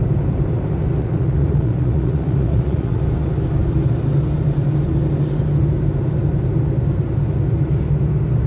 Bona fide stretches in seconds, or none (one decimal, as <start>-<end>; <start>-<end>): 0.0-1.0; 3.0-8.5